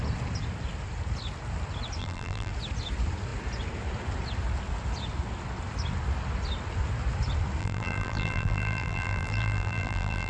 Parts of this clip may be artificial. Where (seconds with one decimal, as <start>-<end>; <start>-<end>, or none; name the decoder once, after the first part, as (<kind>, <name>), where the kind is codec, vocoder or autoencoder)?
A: 2.0-2.5 (vocoder, BigVGAN v2); 7.6-10.3